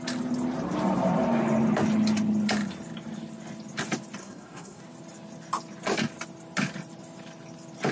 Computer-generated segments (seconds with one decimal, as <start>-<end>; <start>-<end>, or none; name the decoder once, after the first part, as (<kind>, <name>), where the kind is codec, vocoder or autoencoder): 4.2-4.8 (codec, SNAC)